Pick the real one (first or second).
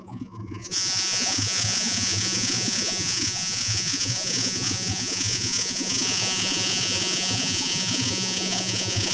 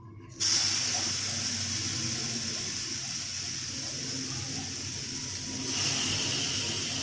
second